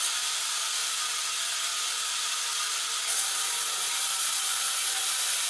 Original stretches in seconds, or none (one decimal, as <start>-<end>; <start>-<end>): 0.0-5.5